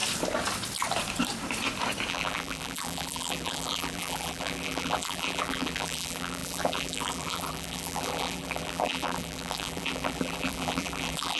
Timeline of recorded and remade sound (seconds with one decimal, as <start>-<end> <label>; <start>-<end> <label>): 0.0-2.1 recorded; 2.1-11.4 remade